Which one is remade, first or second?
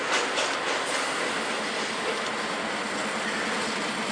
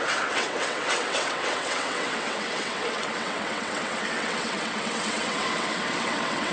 second